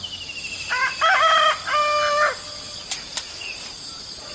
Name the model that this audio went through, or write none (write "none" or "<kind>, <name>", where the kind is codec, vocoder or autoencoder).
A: none